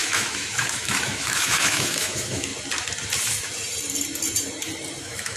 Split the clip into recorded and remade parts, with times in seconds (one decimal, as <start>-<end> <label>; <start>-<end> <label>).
0.0-2.5 remade; 2.5-5.0 recorded; 5.0-5.4 remade